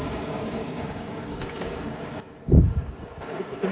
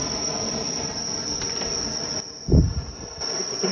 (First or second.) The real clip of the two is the second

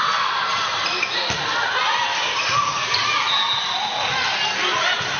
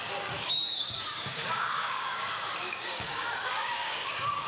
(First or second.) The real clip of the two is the first